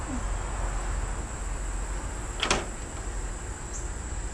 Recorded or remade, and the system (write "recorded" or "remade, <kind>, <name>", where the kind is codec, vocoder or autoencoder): recorded